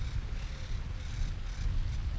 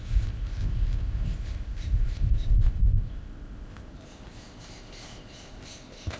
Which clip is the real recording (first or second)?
first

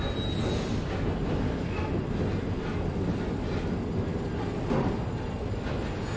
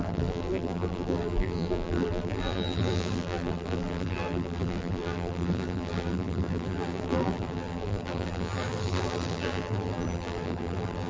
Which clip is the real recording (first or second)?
first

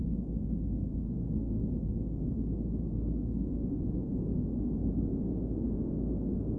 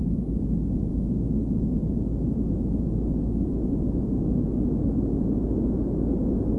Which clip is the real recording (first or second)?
second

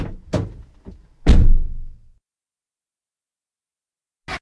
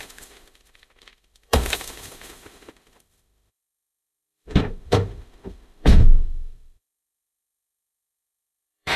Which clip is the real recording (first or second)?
first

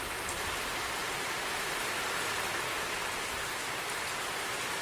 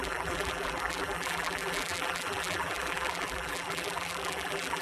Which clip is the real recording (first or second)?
first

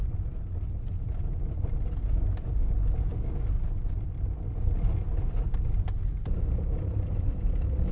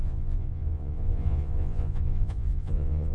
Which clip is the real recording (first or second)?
first